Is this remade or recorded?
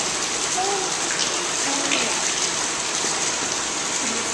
remade